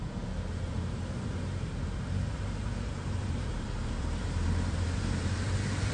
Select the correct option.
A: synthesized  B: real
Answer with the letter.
A